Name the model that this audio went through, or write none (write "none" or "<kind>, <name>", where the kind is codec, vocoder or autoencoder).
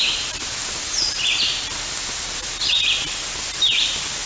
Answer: none